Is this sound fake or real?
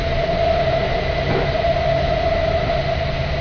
real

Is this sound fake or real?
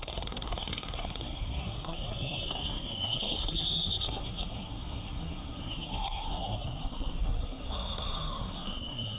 fake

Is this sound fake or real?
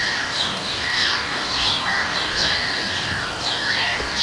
fake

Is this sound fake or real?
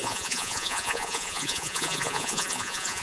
fake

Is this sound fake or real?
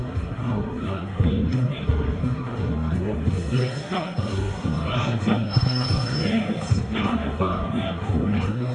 fake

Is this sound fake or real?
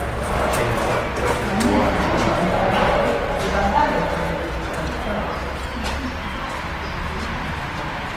real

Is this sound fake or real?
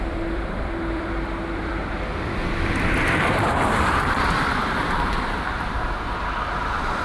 fake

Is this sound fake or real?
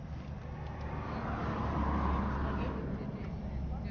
real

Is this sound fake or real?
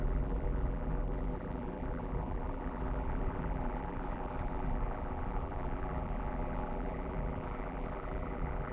fake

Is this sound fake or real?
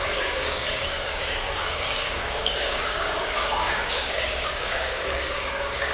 fake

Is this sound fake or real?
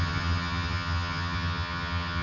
fake